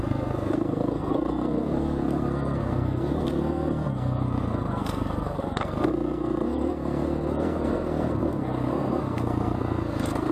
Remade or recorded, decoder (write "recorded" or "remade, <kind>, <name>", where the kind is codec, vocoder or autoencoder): remade, codec, SNAC